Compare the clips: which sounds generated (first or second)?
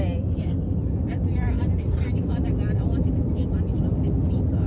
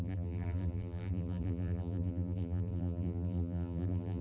second